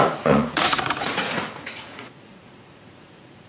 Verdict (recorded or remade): remade